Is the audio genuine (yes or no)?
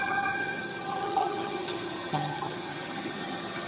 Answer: no